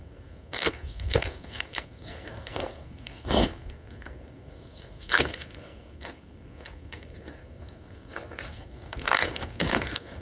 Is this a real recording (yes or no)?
no